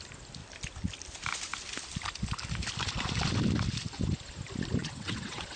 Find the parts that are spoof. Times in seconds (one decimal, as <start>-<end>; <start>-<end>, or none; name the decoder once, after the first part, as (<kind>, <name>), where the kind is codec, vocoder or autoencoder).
4.8-5.6 (vocoder, WaveNeXt)